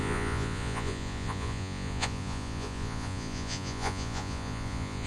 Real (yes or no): no